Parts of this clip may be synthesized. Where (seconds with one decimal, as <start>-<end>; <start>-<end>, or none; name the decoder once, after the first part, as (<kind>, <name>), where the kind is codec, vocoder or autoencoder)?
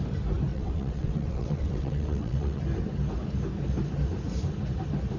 0.5-2.6 (vocoder, WaveNeXt)